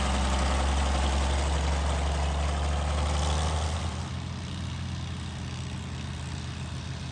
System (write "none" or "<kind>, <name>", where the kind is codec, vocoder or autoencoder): none